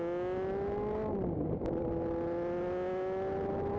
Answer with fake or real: real